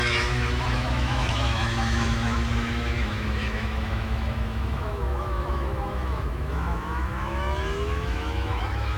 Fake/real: fake